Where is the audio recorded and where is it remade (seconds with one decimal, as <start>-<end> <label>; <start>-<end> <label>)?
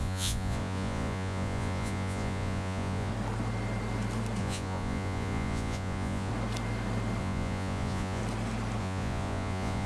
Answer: 0.0-3.1 remade; 3.1-4.4 recorded; 4.4-6.3 remade; 6.3-7.2 recorded; 7.2-8.2 remade; 8.2-8.8 recorded; 8.8-9.9 remade